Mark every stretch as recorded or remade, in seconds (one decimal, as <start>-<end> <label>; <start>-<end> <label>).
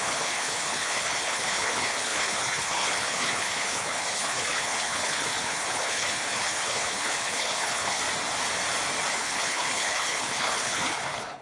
0.0-8.0 remade; 8.0-9.1 recorded; 9.1-11.4 remade